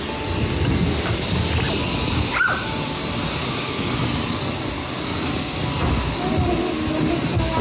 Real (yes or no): yes